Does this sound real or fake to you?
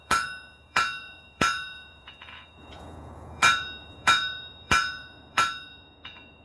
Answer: fake